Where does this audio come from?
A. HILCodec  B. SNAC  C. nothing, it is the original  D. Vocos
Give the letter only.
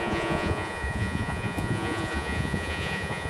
D